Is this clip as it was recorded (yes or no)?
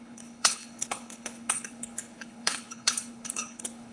no